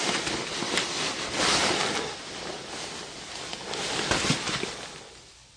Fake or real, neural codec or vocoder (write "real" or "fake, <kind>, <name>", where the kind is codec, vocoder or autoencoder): real